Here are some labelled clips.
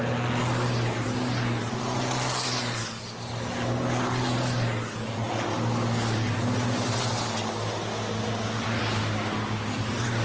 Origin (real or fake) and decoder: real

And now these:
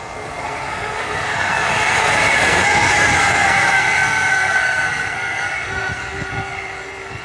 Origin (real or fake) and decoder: fake, codec, SNAC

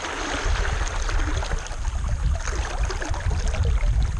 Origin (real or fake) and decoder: real